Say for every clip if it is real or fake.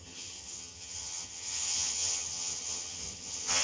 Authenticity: fake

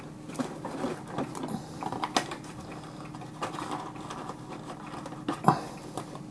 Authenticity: real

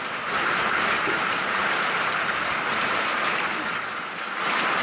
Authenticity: real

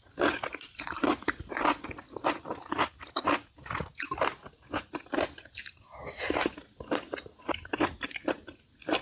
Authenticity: real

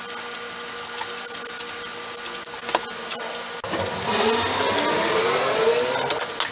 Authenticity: real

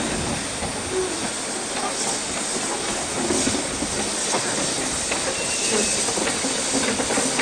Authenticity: real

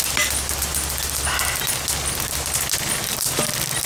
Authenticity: real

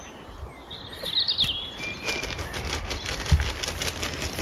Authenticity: real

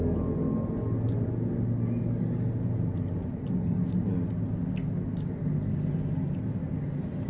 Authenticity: real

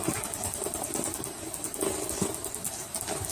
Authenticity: real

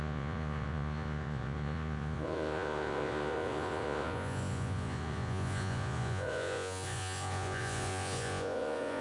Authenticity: fake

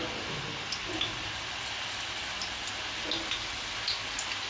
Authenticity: real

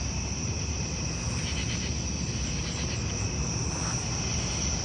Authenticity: real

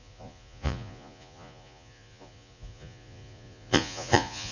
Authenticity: fake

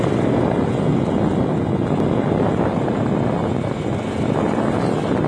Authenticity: real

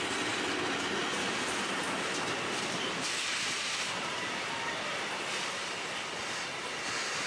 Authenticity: real